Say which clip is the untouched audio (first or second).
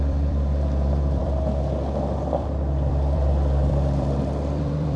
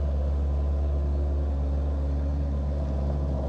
second